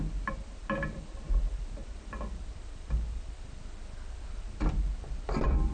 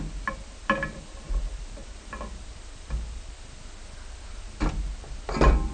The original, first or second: second